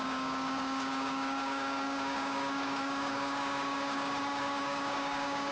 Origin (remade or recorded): remade